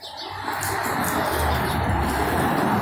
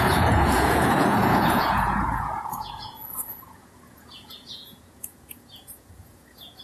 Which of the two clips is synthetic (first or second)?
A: second